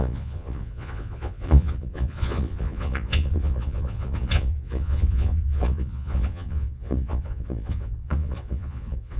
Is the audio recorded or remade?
remade